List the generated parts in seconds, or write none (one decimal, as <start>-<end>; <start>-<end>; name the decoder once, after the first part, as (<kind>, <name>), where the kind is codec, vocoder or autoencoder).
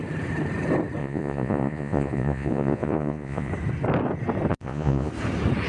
1.0-3.5 (vocoder, Vocos); 4.5-5.1